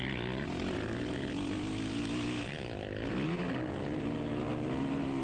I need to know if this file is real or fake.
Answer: real